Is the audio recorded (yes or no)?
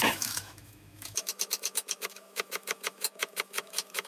no